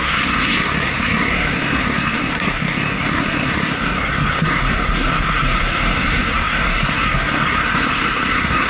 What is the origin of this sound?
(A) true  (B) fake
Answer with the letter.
B